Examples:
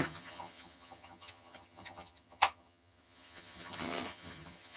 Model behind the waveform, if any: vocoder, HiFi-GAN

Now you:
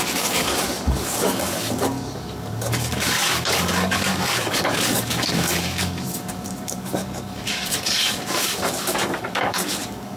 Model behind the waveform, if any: codec, DAC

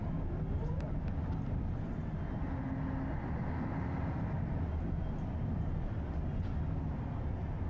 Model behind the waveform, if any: none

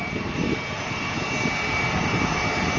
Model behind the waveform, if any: none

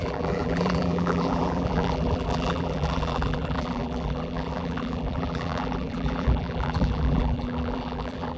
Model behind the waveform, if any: vocoder, BigVGAN v2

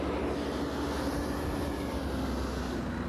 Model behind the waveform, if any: none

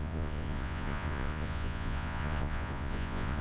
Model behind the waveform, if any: vocoder, Vocos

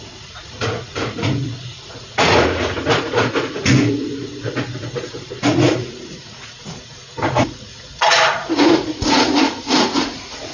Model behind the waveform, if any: vocoder, Vocos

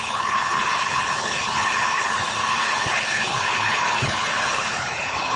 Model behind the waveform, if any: codec, HILCodec